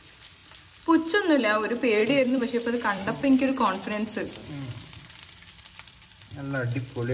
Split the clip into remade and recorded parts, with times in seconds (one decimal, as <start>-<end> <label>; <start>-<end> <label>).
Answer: 0.0-2.0 recorded; 2.0-3.9 remade; 3.9-4.4 recorded; 4.4-5.0 remade; 5.0-7.1 recorded